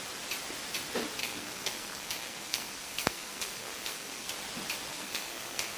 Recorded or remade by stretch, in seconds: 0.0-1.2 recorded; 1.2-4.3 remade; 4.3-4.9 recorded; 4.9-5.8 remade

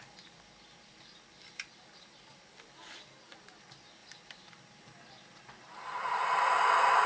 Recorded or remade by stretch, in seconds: 0.0-4.0 recorded; 4.0-6.6 remade; 6.6-7.1 recorded

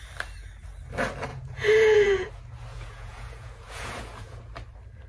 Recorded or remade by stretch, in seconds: 0.0-1.3 recorded; 1.3-2.3 remade; 2.3-2.7 recorded; 2.7-4.4 remade; 4.4-5.1 recorded

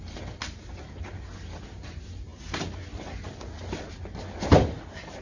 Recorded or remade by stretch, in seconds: 0.0-5.2 recorded

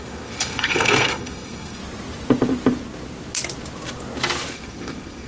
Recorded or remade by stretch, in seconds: 0.0-1.8 remade; 1.8-4.5 recorded; 4.5-5.3 remade